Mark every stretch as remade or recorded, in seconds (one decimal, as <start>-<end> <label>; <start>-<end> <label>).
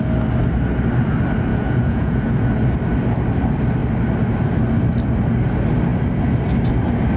0.0-1.5 recorded; 1.5-2.6 remade; 2.6-7.2 recorded